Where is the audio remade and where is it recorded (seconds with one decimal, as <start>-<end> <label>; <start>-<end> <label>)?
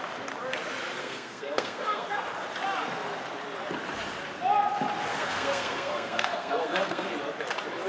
0.0-1.0 recorded; 1.0-2.1 remade; 2.1-5.1 recorded; 5.1-7.1 remade; 7.1-7.9 recorded